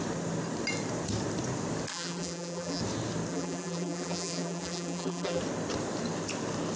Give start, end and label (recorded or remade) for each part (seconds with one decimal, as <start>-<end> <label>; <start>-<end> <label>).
0.0-1.9 recorded; 1.9-2.8 remade; 2.8-3.3 recorded; 3.3-5.4 remade; 5.4-6.8 recorded